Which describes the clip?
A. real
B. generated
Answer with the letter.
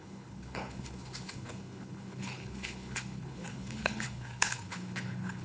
B